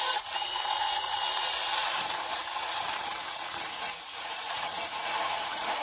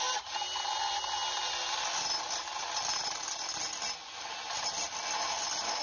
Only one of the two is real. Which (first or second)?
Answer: second